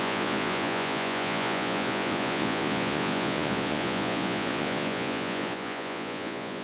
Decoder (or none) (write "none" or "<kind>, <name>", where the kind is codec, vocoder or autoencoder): vocoder, Vocos